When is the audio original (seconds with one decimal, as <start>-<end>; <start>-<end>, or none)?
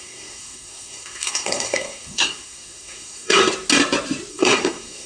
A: 3.4-4.3